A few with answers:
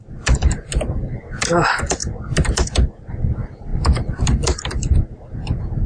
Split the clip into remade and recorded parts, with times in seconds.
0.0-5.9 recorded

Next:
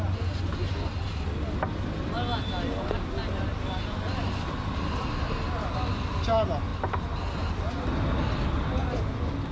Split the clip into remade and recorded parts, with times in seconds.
0.0-9.5 recorded

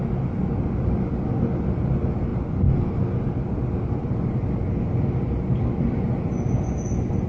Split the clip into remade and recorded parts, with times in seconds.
0.0-7.3 recorded